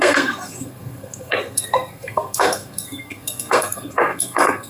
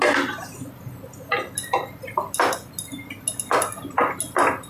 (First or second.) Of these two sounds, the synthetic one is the first